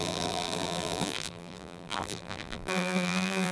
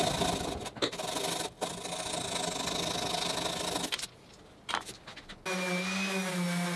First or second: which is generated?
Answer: first